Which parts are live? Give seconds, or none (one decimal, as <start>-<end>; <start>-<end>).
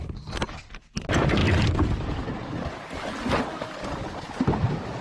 0.0-5.0